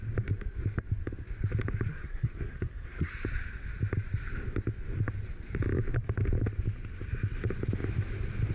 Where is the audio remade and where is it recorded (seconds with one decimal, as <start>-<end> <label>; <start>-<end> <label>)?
0.0-1.9 recorded; 1.9-3.1 remade; 3.1-8.5 recorded